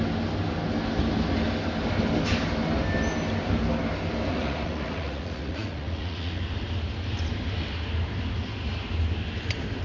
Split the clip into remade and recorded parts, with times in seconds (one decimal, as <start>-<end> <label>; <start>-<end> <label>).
0.0-4.3 recorded; 4.3-6.4 remade; 6.4-9.8 recorded